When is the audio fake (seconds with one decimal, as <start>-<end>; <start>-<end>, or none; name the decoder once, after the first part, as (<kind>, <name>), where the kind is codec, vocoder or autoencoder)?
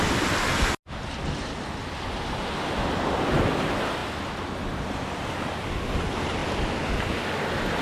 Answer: 4.0-5.3 (vocoder, BigVGAN v2)